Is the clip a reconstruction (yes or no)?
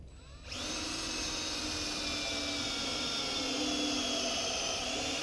no